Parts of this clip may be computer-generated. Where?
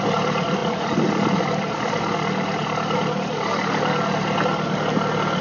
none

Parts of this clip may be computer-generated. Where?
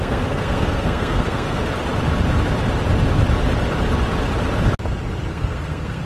0.0-1.6 (codec, SNAC); 5.3-6.1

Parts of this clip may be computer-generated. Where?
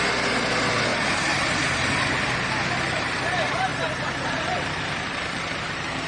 0.9-3.1 (vocoder, BigVGAN v2); 3.7-6.1